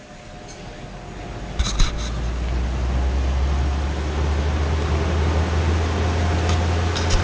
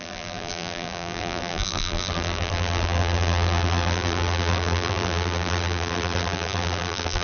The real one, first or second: first